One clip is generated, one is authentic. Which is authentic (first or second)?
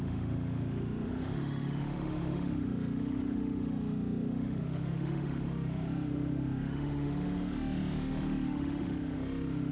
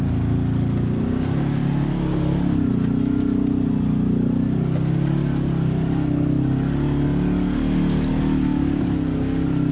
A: second